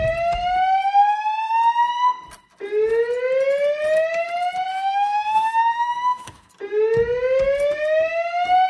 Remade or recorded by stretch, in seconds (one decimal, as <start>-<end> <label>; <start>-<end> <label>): 0.0-4.7 recorded; 4.7-6.5 remade; 6.5-8.7 recorded